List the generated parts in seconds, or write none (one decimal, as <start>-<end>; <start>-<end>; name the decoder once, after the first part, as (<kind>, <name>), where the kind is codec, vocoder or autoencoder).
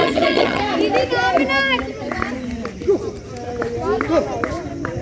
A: 0.0-0.6 (vocoder, HiFi-GAN)